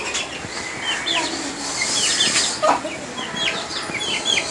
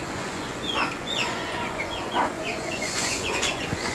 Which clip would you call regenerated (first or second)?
second